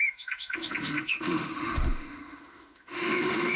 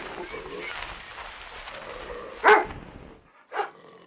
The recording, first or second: second